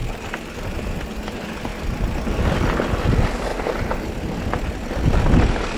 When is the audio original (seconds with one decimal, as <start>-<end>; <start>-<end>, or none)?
0.0-3.5; 4.1-5.8